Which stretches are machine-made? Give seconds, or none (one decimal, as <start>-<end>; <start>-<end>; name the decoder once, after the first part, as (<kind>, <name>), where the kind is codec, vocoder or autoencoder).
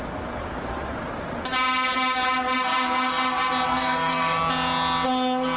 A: 3.7-4.2 (codec, SNAC)